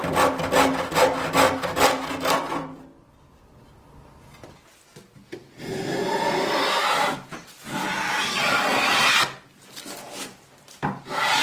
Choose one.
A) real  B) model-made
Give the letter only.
A